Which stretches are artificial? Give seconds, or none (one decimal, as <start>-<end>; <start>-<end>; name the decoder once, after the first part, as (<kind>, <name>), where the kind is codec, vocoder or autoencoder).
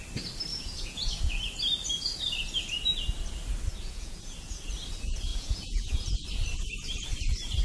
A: 0.5-1.4 (vocoder, Vocos); 3.7-4.7; 5.3-6.1